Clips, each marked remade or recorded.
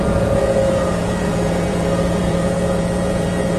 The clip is remade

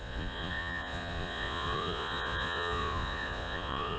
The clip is remade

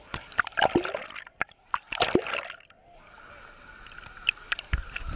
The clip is recorded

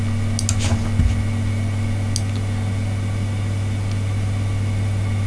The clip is recorded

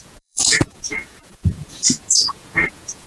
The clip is remade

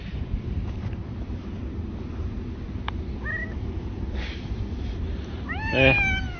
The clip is recorded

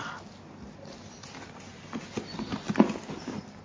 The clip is recorded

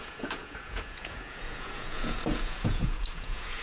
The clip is remade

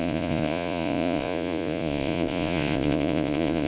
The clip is remade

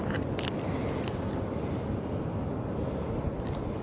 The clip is recorded